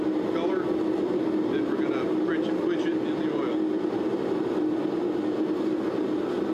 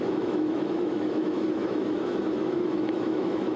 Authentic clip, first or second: first